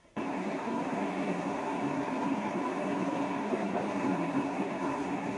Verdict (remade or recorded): remade